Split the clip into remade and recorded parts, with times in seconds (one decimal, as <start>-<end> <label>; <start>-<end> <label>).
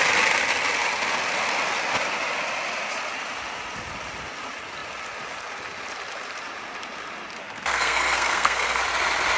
0.0-7.4 recorded; 7.4-8.8 remade; 8.8-9.4 recorded